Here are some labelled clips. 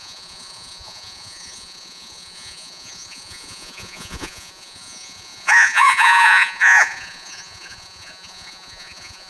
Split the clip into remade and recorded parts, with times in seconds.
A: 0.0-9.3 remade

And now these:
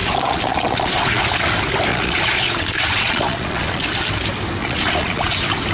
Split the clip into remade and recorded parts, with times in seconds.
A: 0.0-1.2 remade; 1.2-1.9 recorded; 1.9-3.9 remade; 3.9-4.6 recorded; 4.6-5.3 remade; 5.3-5.7 recorded

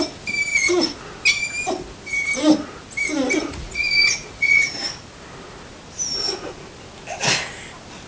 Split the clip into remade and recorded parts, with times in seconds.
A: 0.0-0.5 recorded; 0.5-1.0 remade; 1.0-3.4 recorded; 3.4-4.7 remade; 4.7-8.1 recorded

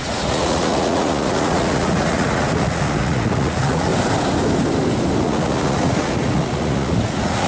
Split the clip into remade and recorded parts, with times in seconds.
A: 0.0-3.9 remade; 3.9-5.2 recorded; 5.2-7.5 remade